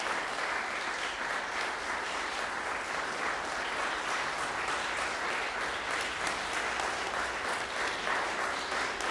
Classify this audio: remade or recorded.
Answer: recorded